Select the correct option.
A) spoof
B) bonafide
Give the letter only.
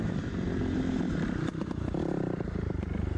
A